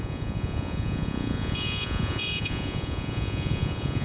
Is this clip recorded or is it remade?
remade